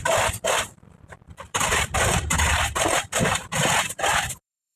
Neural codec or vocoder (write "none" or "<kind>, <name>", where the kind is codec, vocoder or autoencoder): vocoder, BigVGAN v2